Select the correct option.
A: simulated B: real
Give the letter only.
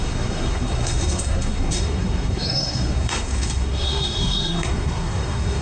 A